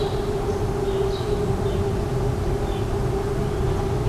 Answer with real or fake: real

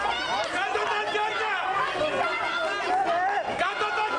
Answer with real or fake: real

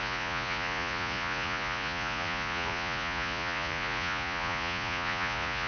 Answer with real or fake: fake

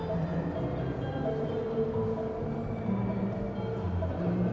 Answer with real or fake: real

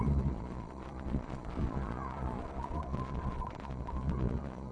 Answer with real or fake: fake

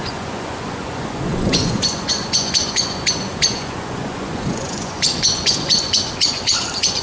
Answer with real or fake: fake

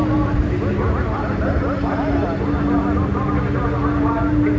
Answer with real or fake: real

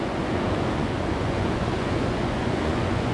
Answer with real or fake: fake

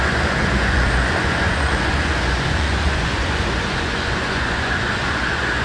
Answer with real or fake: fake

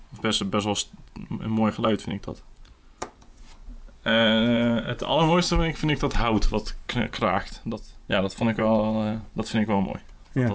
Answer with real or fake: fake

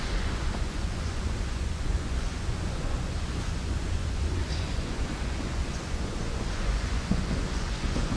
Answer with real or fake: fake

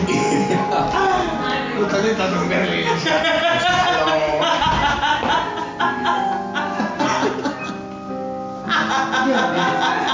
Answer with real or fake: real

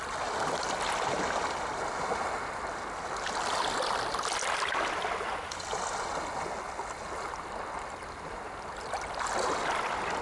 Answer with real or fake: real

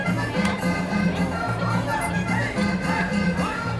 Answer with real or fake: real